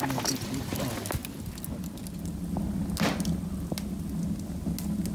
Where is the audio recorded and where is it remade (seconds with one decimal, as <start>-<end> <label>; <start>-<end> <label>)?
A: 0.0-5.1 recorded